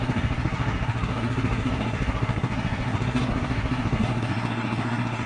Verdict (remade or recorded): remade